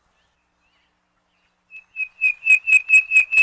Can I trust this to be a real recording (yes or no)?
yes